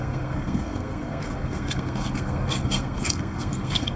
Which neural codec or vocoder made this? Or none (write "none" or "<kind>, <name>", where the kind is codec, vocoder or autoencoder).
codec, SNAC